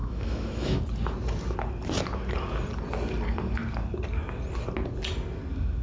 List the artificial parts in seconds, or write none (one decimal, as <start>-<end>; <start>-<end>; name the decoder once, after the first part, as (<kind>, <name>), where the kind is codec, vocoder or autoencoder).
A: 0.0-0.8 (autoencoder, DAC-VAE)